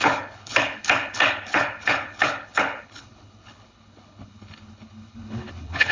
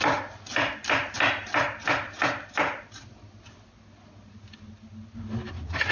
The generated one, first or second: first